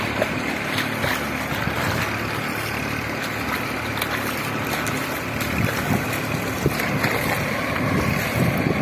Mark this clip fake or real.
real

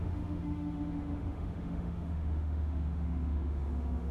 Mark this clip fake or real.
fake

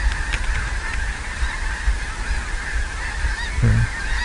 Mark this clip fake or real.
real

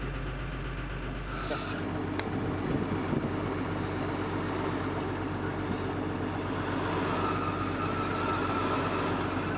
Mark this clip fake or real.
real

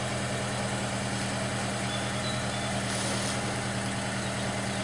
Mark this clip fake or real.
real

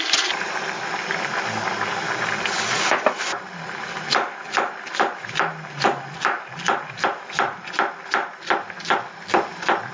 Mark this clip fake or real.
real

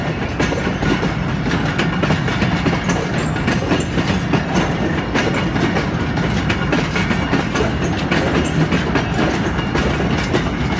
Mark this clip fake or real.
real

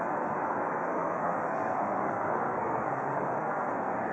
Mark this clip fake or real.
fake